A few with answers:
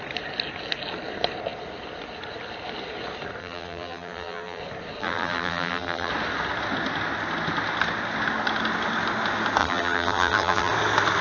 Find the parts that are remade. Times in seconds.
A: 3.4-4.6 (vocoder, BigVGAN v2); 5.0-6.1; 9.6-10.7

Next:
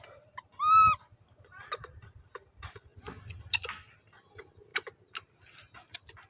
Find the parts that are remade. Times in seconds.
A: 0.0-0.5 (vocoder, BigVGAN v2); 1.0-2.9; 4.3-4.7

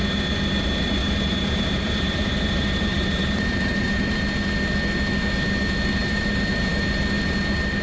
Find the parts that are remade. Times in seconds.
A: 1.0-4.2 (vocoder, BigVGAN v2); 6.0-6.8

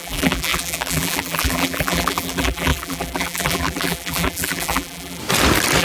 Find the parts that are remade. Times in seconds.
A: 0.0-5.2 (vocoder, BigVGAN v2)

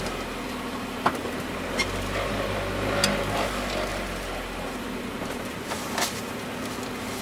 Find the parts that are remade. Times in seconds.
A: 3.9-6.1 (vocoder, BigVGAN v2)

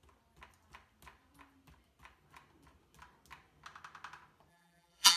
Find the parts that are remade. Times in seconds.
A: 4.5-5.2 (vocoder, BigVGAN v2)

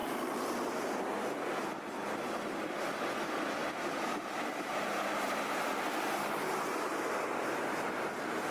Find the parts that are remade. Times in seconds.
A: 0.0-1.0 (vocoder, BigVGAN v2); 3.6-8.5